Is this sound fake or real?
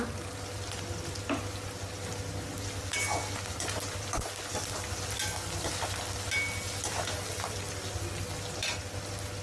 real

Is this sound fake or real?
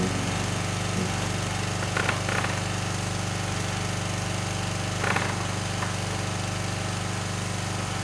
real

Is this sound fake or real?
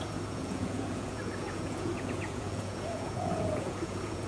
fake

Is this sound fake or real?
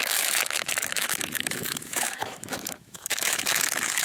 fake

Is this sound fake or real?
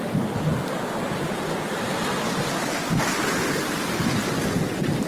real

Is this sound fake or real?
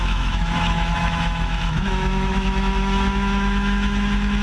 fake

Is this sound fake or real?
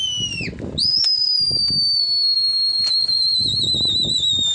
real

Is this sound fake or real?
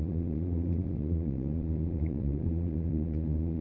fake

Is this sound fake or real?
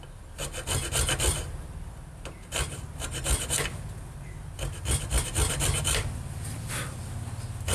real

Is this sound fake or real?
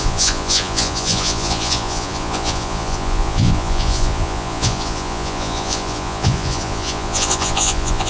fake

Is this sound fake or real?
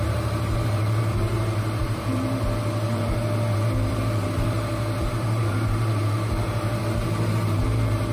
fake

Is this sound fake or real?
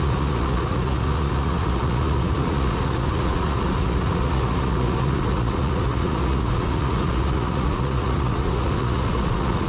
fake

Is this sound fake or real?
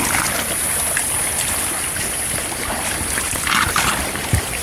real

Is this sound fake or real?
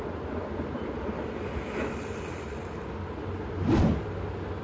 real